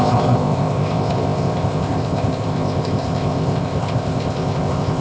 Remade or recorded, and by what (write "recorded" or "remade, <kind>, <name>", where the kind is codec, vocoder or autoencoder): remade, codec, ZipCodec